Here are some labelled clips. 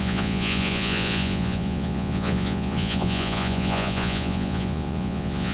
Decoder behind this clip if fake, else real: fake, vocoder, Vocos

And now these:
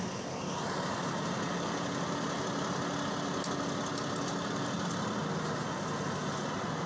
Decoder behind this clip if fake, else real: real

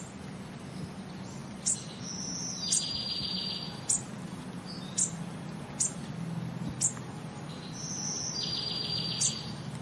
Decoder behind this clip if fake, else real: real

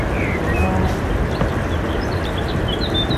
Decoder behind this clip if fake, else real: real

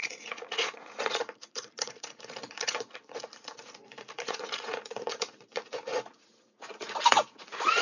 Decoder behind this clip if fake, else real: fake, vocoder, Vocos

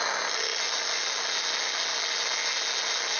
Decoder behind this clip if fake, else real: real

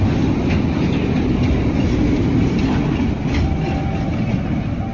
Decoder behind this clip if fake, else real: real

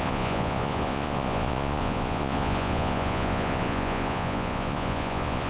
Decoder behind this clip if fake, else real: fake, vocoder, Vocos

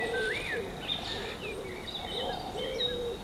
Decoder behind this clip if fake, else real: real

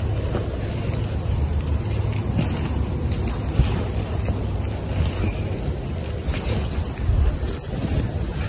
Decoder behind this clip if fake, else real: real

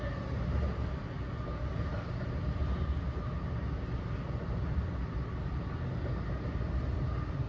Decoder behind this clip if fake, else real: real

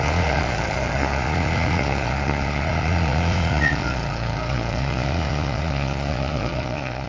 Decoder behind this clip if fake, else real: fake, vocoder, Vocos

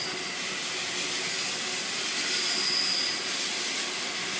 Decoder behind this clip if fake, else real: real